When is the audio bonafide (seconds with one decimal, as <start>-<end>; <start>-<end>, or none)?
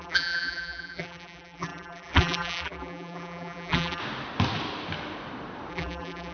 4.0-5.7